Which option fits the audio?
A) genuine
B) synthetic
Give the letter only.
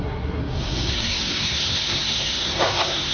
B